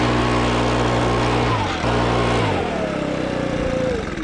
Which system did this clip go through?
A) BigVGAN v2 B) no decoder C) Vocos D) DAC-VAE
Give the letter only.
B